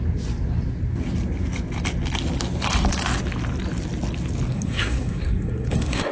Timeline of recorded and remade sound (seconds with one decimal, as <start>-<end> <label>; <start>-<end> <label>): 0.0-4.5 recorded; 4.5-6.1 remade